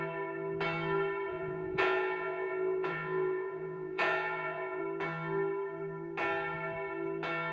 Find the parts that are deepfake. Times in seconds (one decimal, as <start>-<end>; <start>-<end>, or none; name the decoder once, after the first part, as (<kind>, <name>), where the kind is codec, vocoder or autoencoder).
1.3-4.8 (vocoder, Vocos)